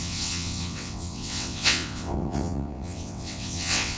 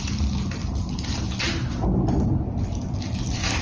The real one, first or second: second